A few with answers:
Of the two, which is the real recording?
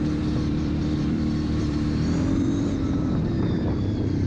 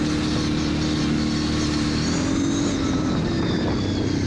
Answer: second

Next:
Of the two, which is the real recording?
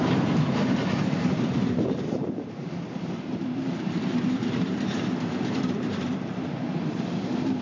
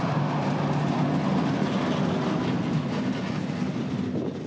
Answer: second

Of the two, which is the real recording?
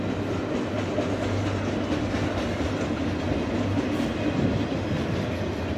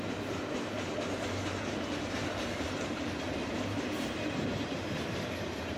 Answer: first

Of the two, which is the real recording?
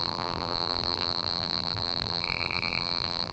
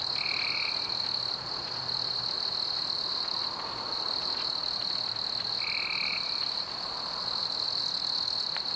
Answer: second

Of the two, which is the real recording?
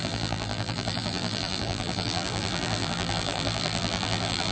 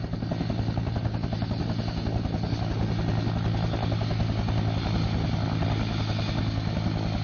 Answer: second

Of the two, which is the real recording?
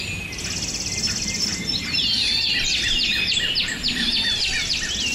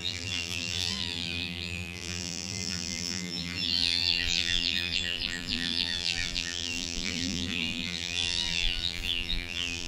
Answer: first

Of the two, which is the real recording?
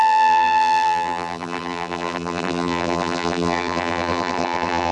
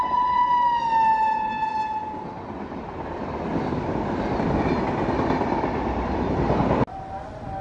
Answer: second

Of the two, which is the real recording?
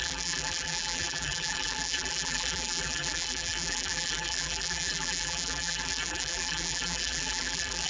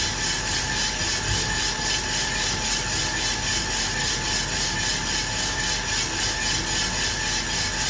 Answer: second